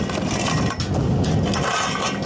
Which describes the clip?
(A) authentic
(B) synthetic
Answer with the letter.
A